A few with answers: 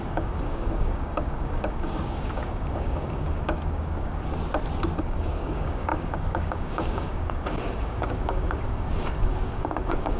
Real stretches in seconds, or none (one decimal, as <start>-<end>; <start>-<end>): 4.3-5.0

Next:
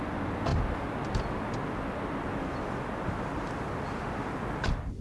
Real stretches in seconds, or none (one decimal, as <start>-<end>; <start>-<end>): 0.0-5.0

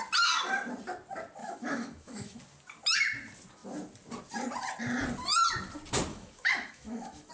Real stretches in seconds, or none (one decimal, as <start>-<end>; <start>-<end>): 0.0-1.4; 2.4-6.1

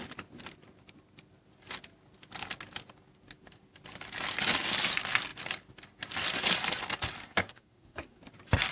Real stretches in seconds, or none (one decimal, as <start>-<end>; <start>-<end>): 0.0-7.2; 8.2-8.7

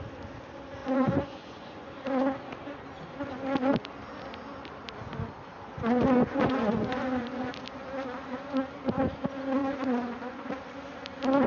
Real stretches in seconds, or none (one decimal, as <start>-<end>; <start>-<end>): 0.0-0.8; 1.9-6.2; 7.5-9.6; 10.5-11.5